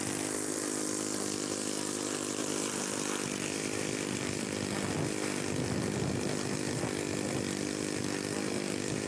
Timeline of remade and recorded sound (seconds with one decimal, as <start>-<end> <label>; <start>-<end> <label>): 0.0-2.4 recorded; 2.4-4.9 remade; 4.9-9.1 recorded